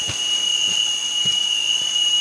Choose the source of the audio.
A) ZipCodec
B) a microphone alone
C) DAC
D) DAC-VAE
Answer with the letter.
B